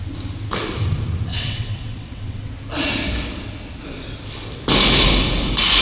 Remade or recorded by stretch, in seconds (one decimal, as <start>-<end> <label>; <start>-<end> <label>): 0.0-1.3 recorded; 1.3-2.5 remade; 2.5-5.8 recorded